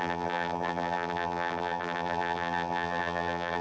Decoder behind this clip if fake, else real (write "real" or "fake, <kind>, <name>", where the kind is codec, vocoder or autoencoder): fake, vocoder, BigVGAN v2